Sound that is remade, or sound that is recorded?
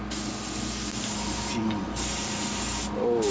recorded